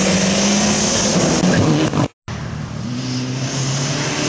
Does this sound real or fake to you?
real